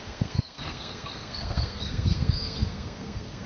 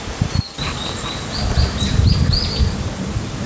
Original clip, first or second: second